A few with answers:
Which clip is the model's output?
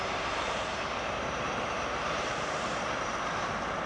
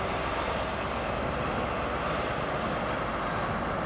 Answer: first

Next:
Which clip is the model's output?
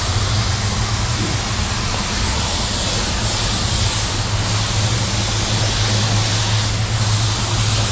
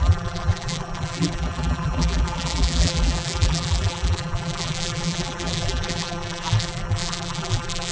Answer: second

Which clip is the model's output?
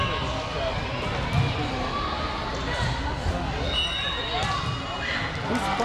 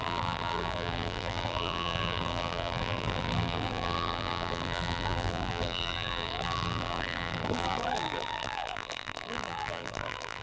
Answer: second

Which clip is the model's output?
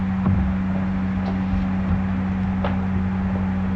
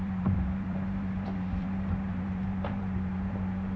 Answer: second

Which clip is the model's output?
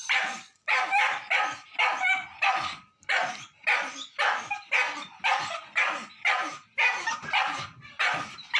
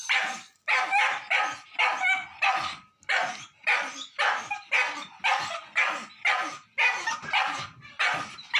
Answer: first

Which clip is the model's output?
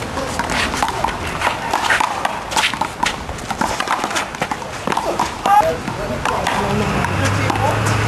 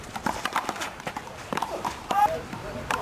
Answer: second